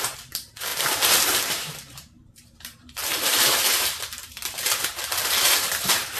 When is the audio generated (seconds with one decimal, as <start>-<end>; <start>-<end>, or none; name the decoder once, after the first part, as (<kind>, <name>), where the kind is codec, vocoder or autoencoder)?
0.0-6.2 (vocoder, BigVGAN v2)